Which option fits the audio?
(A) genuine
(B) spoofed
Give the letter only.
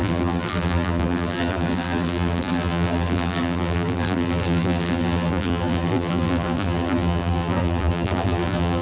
B